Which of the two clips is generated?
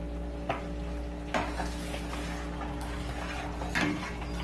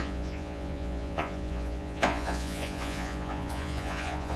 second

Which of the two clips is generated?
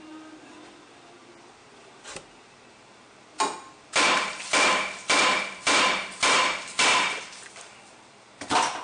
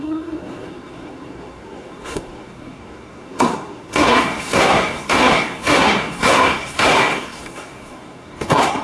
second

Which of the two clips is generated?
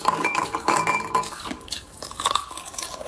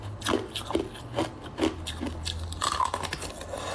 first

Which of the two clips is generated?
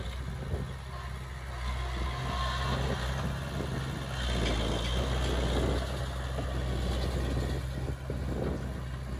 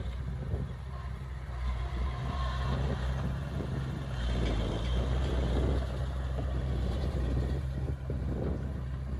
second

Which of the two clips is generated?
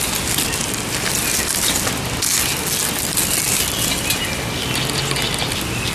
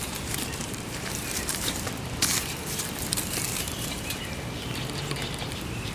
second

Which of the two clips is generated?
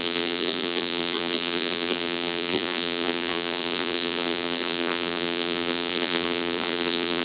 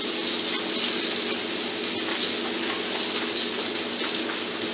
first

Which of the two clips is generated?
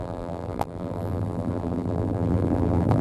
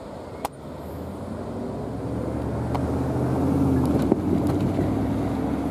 first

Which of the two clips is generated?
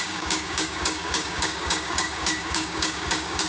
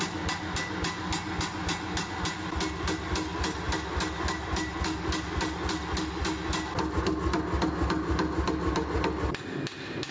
first